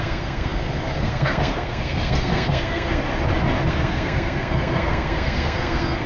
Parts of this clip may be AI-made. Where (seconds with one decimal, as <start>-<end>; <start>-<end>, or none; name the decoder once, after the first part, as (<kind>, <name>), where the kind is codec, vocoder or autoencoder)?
0.0-3.1 (codec, SNAC); 3.7-6.1